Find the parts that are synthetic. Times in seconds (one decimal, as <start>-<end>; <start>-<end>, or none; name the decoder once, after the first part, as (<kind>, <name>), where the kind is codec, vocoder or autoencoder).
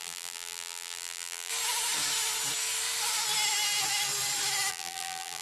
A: 0.0-1.5 (vocoder, BigVGAN v2); 4.7-5.4